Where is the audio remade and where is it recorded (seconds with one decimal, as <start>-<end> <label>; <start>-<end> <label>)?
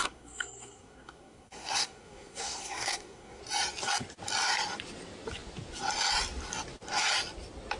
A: 0.0-3.4 remade; 3.4-7.8 recorded